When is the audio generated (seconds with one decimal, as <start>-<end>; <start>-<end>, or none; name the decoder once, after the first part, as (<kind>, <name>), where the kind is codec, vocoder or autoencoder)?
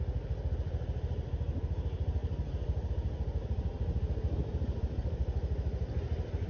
2.2-2.9 (vocoder, BigVGAN v2); 4.4-5.0